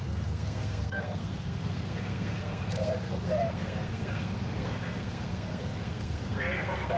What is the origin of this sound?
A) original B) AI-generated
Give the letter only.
B